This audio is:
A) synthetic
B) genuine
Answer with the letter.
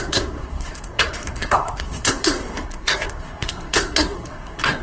A